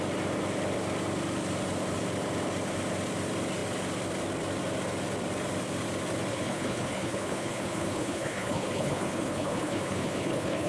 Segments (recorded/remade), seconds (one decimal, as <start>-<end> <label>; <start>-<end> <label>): 0.0-6.3 recorded; 6.3-10.7 remade